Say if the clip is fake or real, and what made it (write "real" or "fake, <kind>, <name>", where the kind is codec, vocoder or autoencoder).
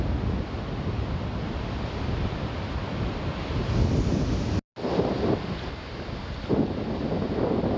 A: real